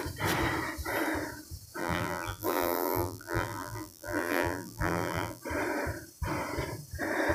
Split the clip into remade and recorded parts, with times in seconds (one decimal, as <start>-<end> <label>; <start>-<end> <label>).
0.0-1.8 recorded; 1.8-5.4 remade; 5.4-7.3 recorded